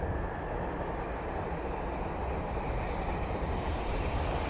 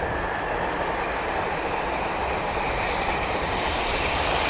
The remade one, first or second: second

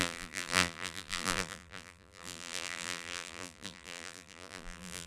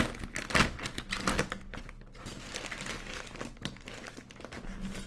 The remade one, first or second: first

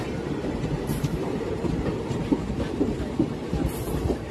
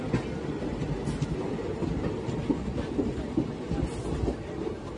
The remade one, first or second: first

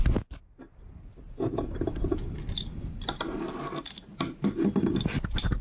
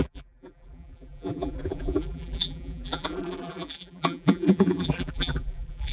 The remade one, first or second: second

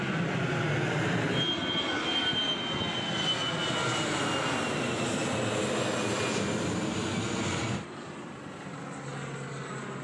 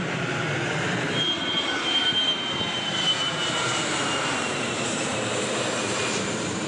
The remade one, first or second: second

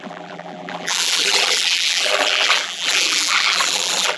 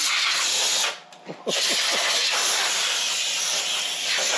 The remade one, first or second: first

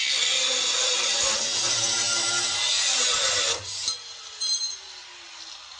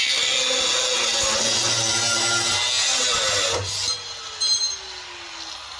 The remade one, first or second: first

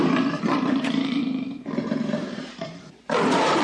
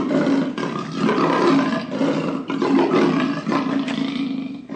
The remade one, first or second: first